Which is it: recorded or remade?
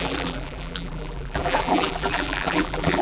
remade